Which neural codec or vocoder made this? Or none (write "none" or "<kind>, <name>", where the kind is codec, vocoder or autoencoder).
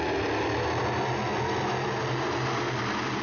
none